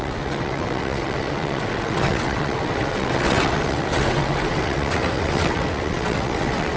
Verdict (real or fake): fake